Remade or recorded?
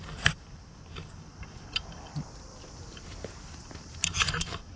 recorded